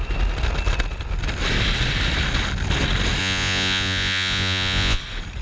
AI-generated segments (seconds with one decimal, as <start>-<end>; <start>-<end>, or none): 3.2-5.0